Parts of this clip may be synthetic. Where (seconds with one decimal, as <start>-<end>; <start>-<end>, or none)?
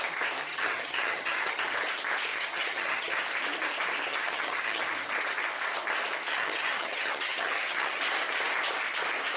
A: 0.5-1.6; 2.3-3.2; 4.1-4.8; 6.3-8.0